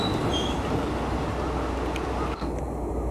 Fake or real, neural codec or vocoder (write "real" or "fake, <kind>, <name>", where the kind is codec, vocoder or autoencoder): real